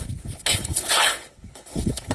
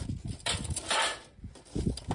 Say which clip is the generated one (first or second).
first